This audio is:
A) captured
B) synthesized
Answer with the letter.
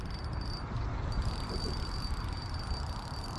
A